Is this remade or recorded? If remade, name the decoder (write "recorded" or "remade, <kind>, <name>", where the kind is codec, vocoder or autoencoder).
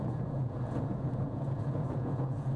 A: remade, vocoder, Vocos